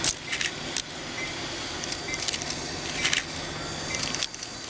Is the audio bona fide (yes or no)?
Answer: yes